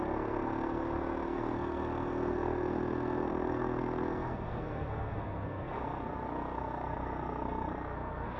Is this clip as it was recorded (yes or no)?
no